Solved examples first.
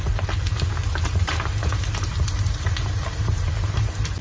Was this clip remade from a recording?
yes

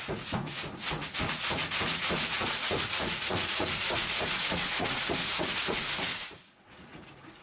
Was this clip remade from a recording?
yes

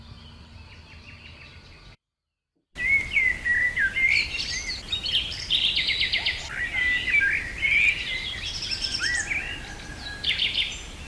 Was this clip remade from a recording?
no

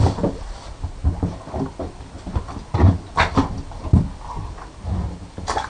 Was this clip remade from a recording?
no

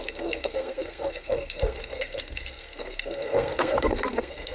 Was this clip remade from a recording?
yes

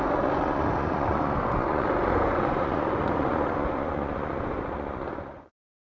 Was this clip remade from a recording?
yes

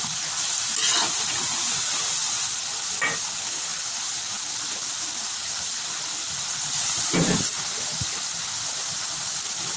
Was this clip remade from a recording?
no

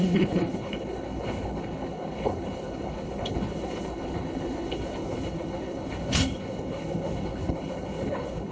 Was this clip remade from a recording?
yes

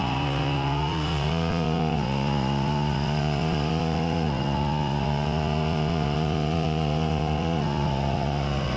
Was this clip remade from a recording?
yes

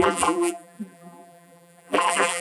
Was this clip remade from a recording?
yes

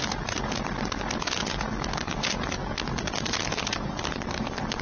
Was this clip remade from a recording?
no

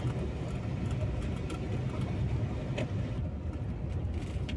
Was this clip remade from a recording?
no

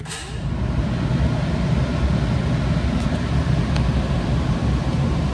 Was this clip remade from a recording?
no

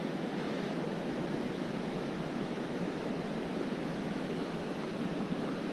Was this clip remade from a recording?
yes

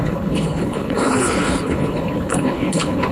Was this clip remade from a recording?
yes